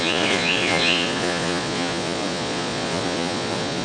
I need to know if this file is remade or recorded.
remade